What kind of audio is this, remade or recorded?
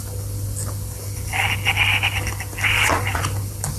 recorded